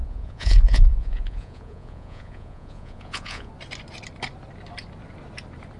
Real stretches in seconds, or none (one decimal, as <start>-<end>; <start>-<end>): 3.5-5.8